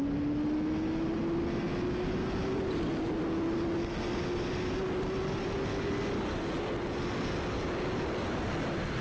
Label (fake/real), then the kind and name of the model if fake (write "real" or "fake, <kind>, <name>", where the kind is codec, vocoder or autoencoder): real